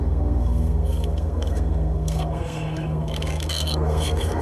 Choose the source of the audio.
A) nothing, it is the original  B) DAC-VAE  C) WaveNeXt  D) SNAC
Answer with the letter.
D